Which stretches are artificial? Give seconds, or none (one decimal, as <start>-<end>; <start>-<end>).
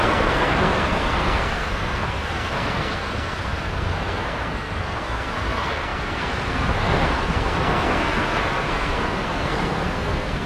0.0-10.5